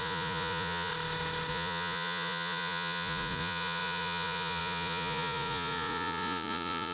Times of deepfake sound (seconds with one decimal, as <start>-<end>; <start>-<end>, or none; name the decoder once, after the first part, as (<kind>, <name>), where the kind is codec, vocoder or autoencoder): 0.0-0.9 (vocoder, Vocos); 1.5-6.9